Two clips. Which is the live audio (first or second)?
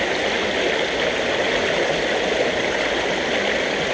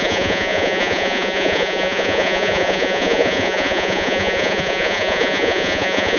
first